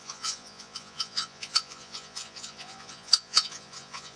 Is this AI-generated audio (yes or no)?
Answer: yes